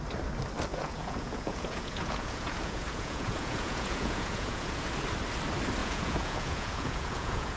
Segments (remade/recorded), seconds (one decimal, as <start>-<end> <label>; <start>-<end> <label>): 0.0-0.7 recorded; 0.7-4.9 remade; 4.9-5.8 recorded; 5.8-7.6 remade